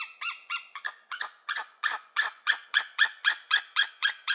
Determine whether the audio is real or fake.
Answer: fake